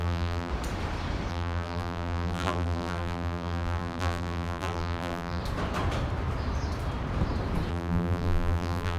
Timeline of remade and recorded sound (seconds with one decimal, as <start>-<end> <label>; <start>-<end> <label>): 0.0-0.5 remade; 0.5-1.3 recorded; 1.3-5.4 remade; 5.4-7.7 recorded; 7.7-9.0 remade